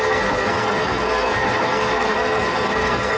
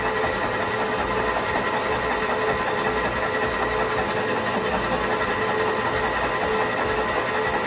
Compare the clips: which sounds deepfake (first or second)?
first